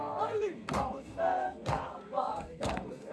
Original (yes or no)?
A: no